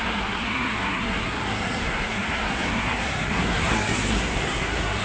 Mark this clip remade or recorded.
remade